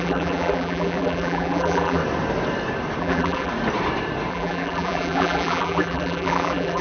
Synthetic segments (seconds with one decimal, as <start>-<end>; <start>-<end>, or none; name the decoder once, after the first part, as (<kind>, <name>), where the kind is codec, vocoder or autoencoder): 0.0-2.0 (vocoder, BigVGAN v2); 3.0-3.5; 4.3-6.8